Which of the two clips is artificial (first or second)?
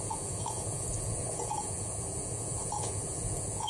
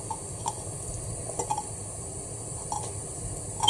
first